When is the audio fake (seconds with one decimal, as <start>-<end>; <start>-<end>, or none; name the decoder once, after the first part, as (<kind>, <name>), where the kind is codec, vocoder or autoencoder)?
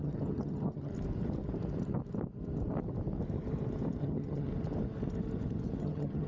0.0-0.9 (vocoder, HiFi-GAN); 4.0-4.5; 5.8-6.3